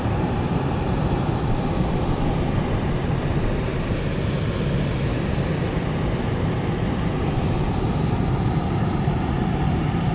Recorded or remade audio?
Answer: recorded